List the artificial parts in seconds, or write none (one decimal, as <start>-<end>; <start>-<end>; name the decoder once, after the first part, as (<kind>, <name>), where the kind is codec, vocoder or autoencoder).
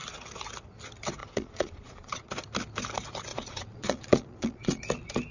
1.2-2.3 (vocoder, Vocos); 3.3-4.8